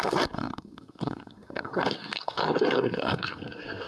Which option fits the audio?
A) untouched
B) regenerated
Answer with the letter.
B